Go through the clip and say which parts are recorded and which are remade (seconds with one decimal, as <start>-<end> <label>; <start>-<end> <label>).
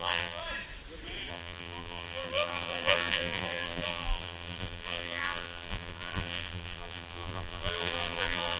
0.0-0.4 remade; 0.4-1.3 recorded; 1.3-8.6 remade